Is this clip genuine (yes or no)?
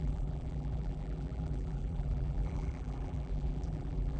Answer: no